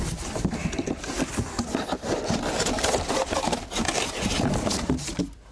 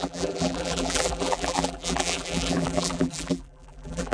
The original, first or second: first